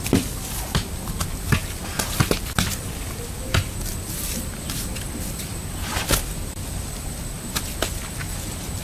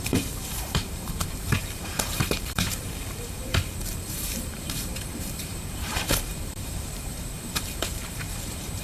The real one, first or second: first